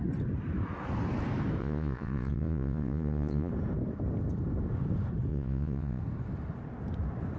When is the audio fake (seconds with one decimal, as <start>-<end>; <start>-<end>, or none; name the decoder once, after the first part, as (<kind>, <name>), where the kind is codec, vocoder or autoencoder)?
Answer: 1.6-3.5 (vocoder, Vocos); 5.3-6.0